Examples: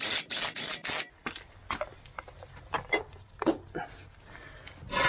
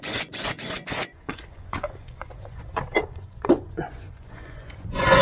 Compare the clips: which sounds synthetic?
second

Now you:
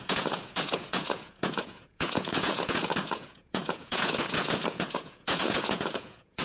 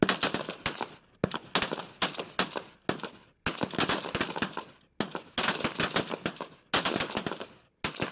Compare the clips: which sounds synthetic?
first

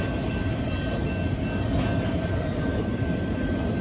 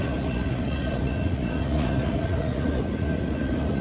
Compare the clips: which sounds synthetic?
second